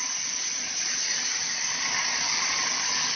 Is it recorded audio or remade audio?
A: recorded